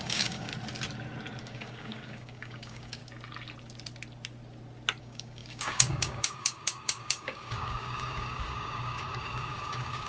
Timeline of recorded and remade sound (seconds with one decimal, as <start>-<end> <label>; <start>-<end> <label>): 0.0-0.5 remade; 0.5-1.4 recorded; 1.4-3.0 remade; 3.0-5.0 recorded; 5.0-10.1 remade